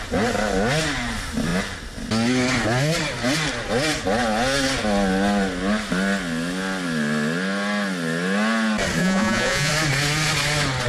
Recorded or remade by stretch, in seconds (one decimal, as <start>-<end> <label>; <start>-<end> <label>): 0.0-9.0 recorded; 9.0-9.7 remade; 9.7-10.9 recorded